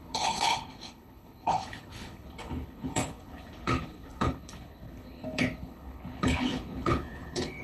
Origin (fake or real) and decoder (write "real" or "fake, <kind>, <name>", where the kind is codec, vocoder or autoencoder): fake, codec, HILCodec